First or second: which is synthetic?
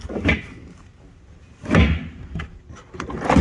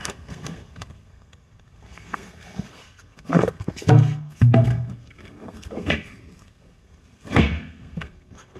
second